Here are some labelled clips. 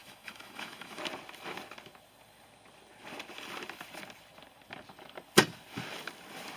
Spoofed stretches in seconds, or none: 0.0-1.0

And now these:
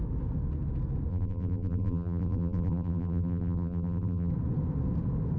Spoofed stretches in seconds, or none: 1.1-4.3